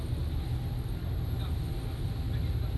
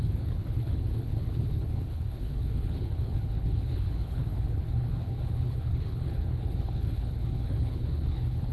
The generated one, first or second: second